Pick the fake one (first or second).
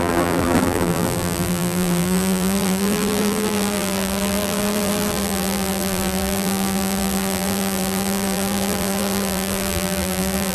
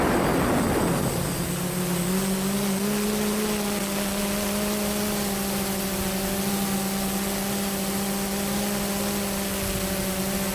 first